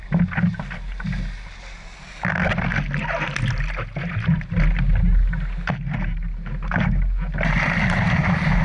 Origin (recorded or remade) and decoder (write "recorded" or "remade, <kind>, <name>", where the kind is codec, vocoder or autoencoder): recorded